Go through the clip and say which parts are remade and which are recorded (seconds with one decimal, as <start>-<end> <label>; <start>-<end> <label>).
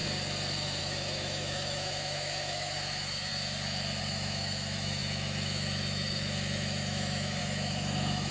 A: 0.0-0.8 recorded; 0.8-3.3 remade; 3.3-4.0 recorded; 4.0-8.3 remade